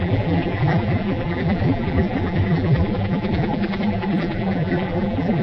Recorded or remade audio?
remade